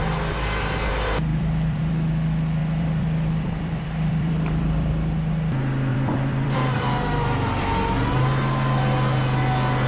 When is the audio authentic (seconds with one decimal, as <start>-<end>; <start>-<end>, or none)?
0.0-1.3; 1.9-2.6; 4.9-5.9; 7.6-9.9